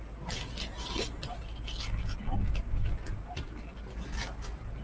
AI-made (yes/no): no